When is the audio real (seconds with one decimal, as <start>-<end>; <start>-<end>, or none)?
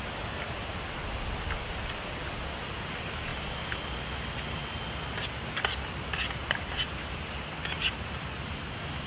0.0-9.1